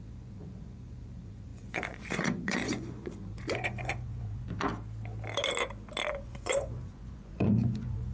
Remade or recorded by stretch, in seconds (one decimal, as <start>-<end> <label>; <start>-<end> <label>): 0.0-4.7 remade; 4.7-6.1 recorded; 6.1-8.1 remade